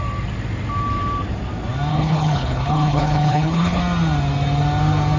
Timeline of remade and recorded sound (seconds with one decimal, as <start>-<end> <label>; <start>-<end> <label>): 0.0-1.9 recorded; 1.9-3.8 remade; 3.8-5.2 recorded